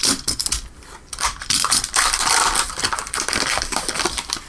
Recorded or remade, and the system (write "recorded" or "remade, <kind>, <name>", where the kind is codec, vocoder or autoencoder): remade, vocoder, BigVGAN v2